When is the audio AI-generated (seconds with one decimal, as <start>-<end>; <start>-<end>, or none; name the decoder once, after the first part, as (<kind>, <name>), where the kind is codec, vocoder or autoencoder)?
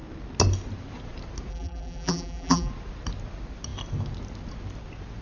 1.5-2.7 (vocoder, BigVGAN v2)